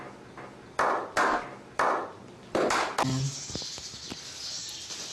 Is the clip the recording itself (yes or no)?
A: yes